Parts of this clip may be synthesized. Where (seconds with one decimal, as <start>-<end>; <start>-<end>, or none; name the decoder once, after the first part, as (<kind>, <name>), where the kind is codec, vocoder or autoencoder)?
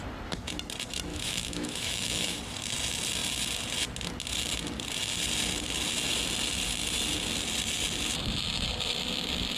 1.1-2.4 (autoencoder, DAC-VAE)